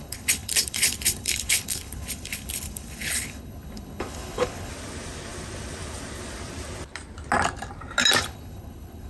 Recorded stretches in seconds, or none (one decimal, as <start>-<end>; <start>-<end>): 4.7-8.2